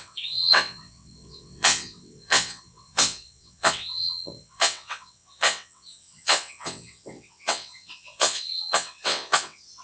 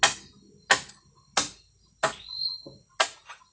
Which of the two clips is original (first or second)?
second